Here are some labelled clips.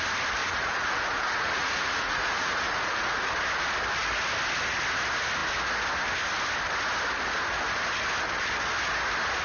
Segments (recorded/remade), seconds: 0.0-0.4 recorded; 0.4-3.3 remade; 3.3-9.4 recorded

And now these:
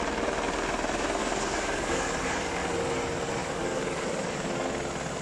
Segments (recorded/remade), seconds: 0.0-1.2 recorded; 1.2-2.6 remade; 2.6-3.4 recorded; 3.4-4.7 remade; 4.7-5.2 recorded

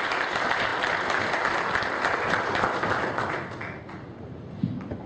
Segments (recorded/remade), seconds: 0.0-5.1 recorded

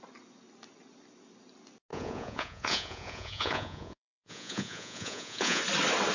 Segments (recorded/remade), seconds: 0.0-1.9 recorded; 1.9-5.6 remade; 5.6-6.1 recorded

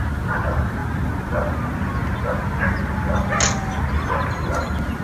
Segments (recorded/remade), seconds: 0.0-5.0 recorded